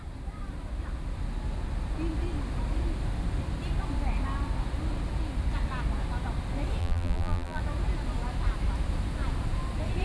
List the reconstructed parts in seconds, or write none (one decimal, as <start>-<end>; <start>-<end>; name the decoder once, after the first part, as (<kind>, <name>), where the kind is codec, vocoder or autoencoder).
6.8-7.6 (vocoder, BigVGAN v2)

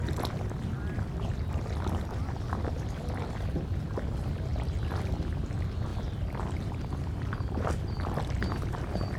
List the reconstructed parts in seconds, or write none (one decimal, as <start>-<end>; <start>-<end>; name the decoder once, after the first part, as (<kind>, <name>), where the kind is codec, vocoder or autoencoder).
0.0-4.5 (vocoder, BigVGAN v2); 5.1-9.2

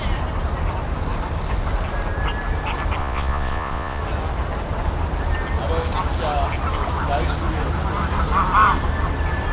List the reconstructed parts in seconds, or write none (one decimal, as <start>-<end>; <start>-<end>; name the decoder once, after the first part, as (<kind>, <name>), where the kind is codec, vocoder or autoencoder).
3.0-4.0 (vocoder, Vocos)

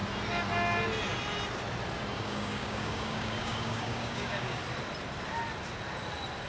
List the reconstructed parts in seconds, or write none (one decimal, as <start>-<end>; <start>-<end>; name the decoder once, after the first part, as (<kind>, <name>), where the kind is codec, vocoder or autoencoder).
2.1-4.6 (codec, DAC)

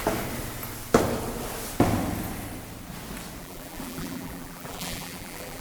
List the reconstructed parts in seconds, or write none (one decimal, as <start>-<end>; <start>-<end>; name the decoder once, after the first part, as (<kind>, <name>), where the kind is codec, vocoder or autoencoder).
3.4-5.6 (vocoder, BigVGAN v2)

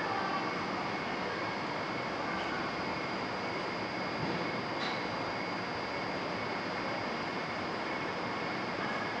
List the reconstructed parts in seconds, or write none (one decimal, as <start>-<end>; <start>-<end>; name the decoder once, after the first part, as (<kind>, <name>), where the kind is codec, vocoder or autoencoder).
2.9-3.6 (vocoder, BigVGAN v2); 7.3-9.2

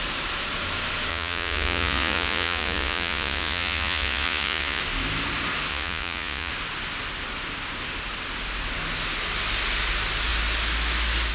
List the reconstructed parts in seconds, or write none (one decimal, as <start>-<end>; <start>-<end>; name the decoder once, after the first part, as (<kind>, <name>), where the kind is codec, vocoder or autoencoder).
1.1-4.8 (vocoder, Vocos); 5.7-6.5